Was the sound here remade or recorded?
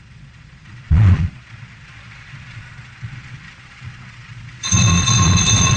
remade